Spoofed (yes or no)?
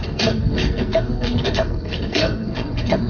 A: yes